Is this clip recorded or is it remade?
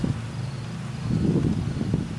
recorded